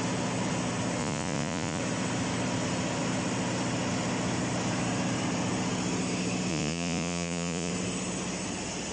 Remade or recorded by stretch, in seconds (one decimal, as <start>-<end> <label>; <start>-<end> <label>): 0.0-1.0 recorded; 1.0-1.8 remade; 1.8-6.5 recorded; 6.5-7.7 remade; 7.7-8.9 recorded